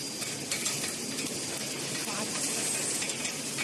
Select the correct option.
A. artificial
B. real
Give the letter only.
B